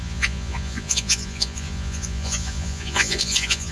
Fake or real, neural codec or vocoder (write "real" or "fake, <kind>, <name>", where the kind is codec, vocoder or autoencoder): fake, vocoder, Vocos